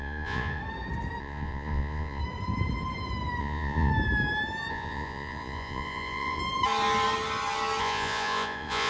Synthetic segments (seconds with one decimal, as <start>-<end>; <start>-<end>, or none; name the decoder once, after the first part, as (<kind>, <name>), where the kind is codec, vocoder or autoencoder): 0.0-0.6 (vocoder, Vocos); 1.2-2.2; 3.4-3.9; 4.7-6.4; 7.8-8.9